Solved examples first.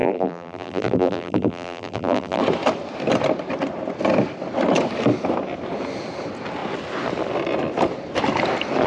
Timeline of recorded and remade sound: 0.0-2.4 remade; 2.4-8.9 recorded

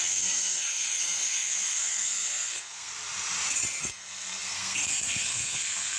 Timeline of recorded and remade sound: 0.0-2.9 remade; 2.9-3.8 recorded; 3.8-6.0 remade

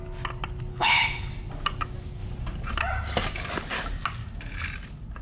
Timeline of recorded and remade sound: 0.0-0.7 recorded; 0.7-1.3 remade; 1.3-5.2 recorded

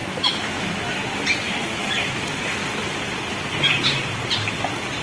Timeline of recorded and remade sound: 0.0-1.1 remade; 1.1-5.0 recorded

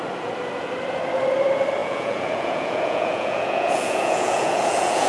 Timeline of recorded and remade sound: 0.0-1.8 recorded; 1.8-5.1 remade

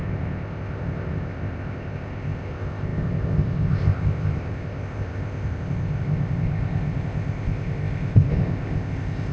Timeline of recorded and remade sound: 0.0-9.3 remade

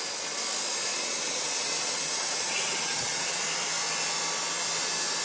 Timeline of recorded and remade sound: 0.0-0.9 recorded; 0.9-3.4 remade; 3.4-5.2 recorded

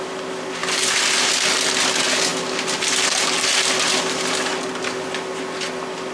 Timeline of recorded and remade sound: 0.0-6.1 recorded